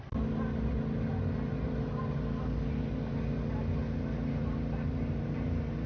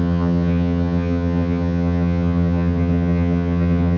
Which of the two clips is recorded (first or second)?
first